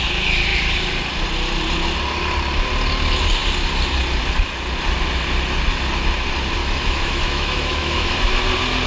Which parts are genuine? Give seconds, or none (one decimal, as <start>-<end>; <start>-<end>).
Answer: 0.0-6.6; 8.3-8.9

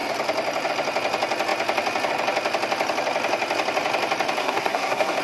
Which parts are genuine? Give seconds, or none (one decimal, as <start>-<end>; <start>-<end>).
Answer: 0.0-4.4

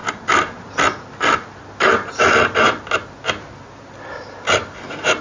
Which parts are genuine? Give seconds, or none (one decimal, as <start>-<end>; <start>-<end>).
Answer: 0.0-5.2

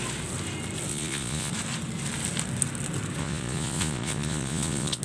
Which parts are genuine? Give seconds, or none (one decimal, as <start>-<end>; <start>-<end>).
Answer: 0.0-0.9; 1.5-3.2

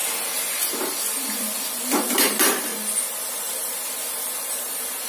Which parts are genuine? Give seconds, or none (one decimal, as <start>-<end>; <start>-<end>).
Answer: 0.0-2.0; 2.7-3.3; 3.8-4.3

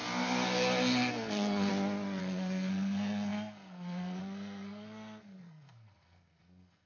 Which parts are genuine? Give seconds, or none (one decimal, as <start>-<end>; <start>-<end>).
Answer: 0.0-1.1; 1.7-2.2